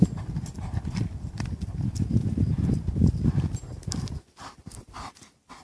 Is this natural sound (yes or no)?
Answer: yes